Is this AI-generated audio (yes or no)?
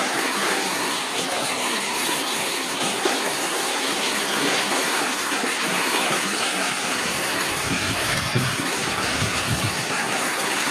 yes